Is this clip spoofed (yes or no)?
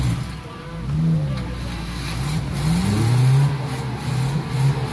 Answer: no